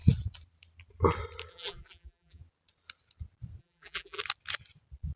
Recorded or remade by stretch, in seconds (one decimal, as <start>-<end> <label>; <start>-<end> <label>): 0.0-1.5 recorded; 1.5-2.4 remade; 2.4-3.6 recorded; 3.6-4.2 remade; 4.2-5.2 recorded